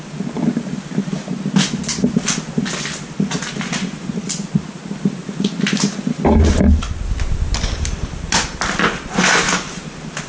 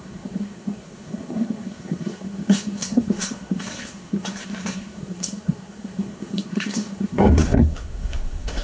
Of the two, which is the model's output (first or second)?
second